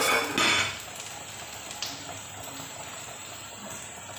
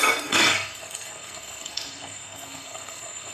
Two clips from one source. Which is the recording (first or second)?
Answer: first